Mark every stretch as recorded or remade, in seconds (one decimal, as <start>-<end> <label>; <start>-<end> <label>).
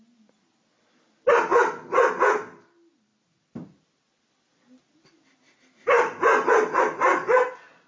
0.0-7.9 recorded